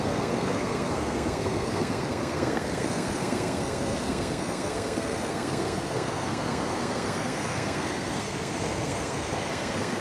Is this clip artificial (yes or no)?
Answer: yes